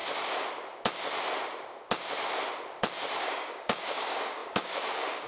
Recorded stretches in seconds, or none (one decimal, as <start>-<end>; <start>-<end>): 0.0-3.2